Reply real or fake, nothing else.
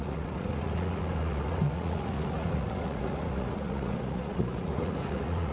fake